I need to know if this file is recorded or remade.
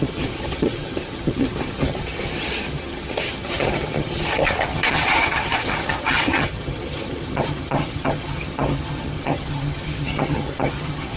remade